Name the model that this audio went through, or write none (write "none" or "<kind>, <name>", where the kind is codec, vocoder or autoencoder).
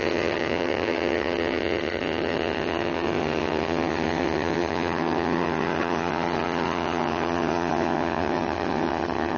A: vocoder, HiFi-GAN